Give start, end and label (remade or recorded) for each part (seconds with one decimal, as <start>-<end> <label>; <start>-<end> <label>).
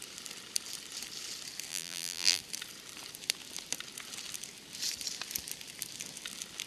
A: 0.0-1.7 recorded; 1.7-2.4 remade; 2.4-6.7 recorded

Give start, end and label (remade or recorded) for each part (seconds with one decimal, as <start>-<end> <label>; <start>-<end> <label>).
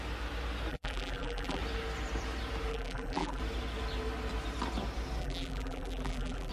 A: 0.0-0.7 recorded; 0.7-1.6 remade; 1.6-2.7 recorded; 2.7-3.4 remade; 3.4-5.2 recorded; 5.2-6.5 remade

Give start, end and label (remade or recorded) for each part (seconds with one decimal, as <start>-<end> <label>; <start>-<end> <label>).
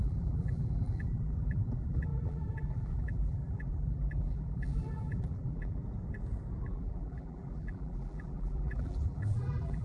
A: 0.0-5.8 remade; 5.8-6.6 recorded; 6.6-9.8 remade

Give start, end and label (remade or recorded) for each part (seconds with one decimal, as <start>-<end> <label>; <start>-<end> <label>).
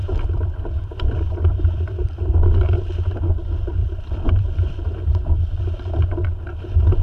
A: 0.0-2.0 remade; 2.0-3.8 recorded; 3.8-5.6 remade; 5.6-7.0 recorded